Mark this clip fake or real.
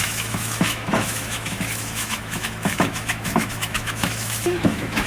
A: fake